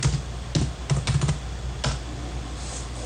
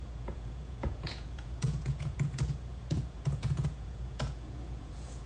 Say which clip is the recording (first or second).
first